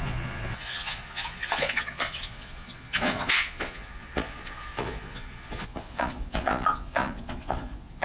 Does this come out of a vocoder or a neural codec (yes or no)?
yes